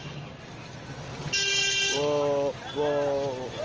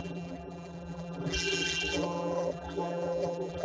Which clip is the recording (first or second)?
first